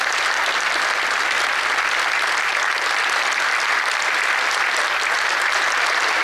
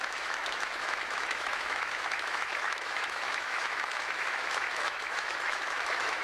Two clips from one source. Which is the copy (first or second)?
second